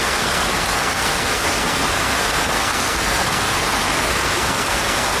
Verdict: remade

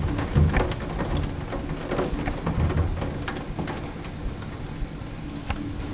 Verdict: recorded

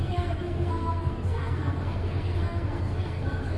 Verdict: remade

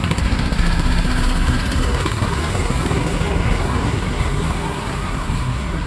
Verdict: remade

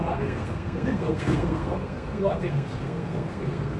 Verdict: remade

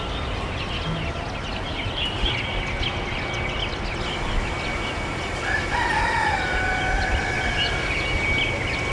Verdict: recorded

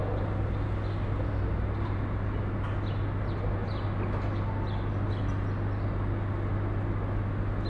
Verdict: recorded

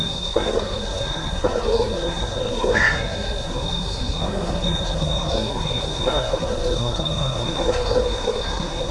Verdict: remade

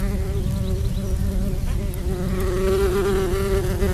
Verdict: recorded